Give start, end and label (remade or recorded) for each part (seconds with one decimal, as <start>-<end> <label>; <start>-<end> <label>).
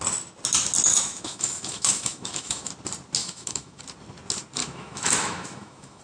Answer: 0.0-0.9 recorded; 0.9-2.7 remade; 2.7-3.2 recorded; 3.2-3.8 remade; 3.8-4.6 recorded; 4.6-6.0 remade